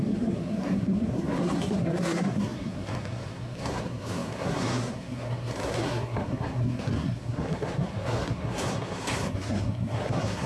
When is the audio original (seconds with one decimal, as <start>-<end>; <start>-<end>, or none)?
none

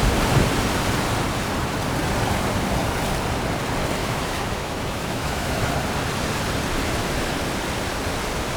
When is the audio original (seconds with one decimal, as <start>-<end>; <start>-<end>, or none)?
0.0-4.0; 5.7-8.6

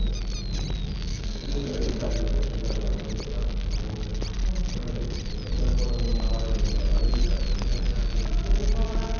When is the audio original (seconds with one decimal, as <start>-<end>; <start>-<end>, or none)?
0.0-1.1; 2.1-9.2

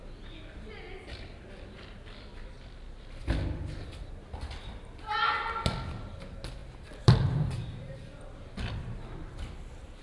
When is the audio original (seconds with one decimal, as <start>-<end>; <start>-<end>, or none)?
0.0-10.0